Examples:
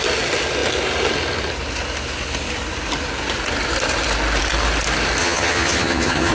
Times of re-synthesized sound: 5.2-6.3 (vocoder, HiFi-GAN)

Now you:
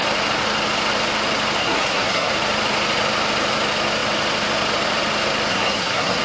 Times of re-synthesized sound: 1.6-2.3 (codec, SNAC); 5.5-6.2

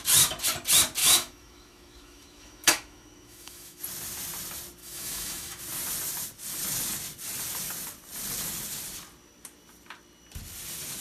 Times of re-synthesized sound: 1.0-3.8 (autoencoder, DAC-VAE); 4.8-5.6

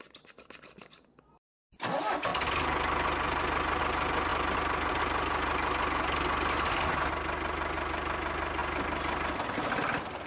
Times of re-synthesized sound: none

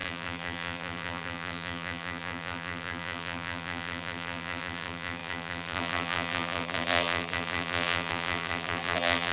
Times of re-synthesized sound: 0.0-9.3 (vocoder, BigVGAN v2)

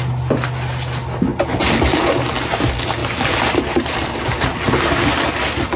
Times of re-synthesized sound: 3.0-4.9 (vocoder, BigVGAN v2)

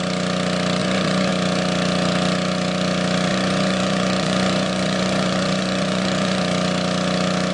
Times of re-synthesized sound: 0.8-1.3 (vocoder, Vocos); 3.3-6.4